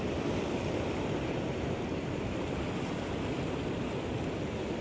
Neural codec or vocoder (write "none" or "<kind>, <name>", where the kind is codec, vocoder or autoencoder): none